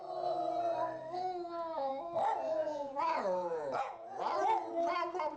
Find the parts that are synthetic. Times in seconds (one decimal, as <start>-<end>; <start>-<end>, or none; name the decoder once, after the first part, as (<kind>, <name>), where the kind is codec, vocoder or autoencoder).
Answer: 2.6-4.2 (vocoder, Vocos)